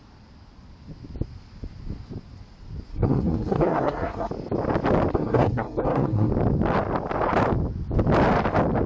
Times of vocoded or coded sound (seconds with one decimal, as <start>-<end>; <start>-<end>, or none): 2.9-4.3; 5.1-6.3